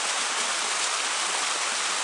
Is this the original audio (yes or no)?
yes